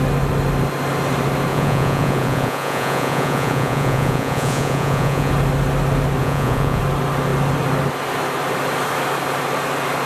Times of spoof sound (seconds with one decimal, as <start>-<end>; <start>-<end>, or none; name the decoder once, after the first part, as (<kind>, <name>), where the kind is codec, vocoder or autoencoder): 1.5-5.3 (vocoder, Vocos); 6.2-6.8